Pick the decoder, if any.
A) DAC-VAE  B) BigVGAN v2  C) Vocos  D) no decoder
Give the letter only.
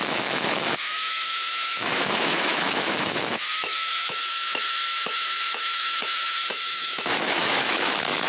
A